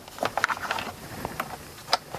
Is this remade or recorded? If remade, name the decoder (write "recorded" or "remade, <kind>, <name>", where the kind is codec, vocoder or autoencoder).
remade, vocoder, BigVGAN v2